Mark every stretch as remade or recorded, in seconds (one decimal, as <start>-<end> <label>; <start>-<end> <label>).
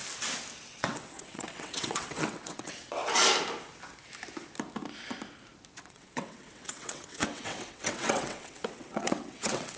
0.0-0.6 recorded; 0.6-3.0 remade; 3.0-5.7 recorded; 5.7-9.8 remade